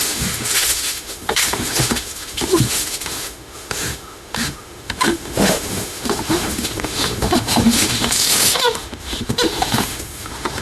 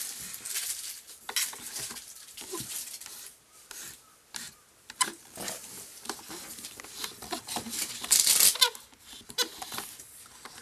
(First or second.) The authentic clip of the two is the second